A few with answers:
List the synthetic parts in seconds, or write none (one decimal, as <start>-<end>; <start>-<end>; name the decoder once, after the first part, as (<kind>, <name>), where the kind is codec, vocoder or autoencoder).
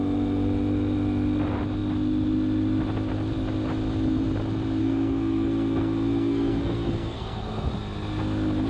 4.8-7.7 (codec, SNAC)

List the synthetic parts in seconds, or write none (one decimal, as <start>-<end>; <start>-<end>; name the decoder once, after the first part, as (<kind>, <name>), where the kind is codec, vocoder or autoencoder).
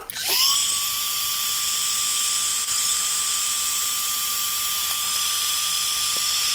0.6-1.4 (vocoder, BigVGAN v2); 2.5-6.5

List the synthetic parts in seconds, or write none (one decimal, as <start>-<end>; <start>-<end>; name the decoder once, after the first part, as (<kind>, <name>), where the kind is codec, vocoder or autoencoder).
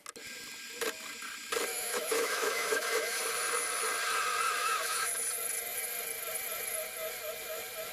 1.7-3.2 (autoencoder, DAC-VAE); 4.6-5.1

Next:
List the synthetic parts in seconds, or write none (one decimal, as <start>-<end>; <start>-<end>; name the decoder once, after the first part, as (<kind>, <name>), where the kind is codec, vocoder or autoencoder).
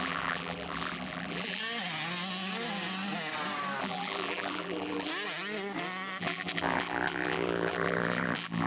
0.0-1.6 (vocoder, BigVGAN v2); 3.8-5.1; 6.2-8.7